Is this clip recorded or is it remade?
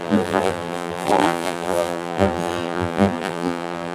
remade